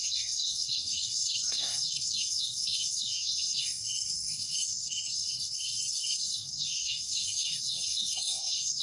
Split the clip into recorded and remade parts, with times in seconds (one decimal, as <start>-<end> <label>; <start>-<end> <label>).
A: 0.0-8.8 remade